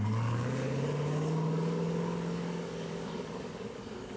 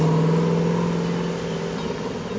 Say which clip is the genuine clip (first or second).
second